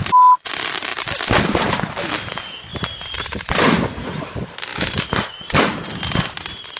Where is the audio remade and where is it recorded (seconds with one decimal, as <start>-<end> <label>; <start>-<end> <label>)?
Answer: 0.0-0.9 recorded; 0.9-1.7 remade; 1.7-2.7 recorded; 2.7-3.5 remade; 3.5-4.7 recorded; 4.7-5.4 remade; 5.4-6.8 recorded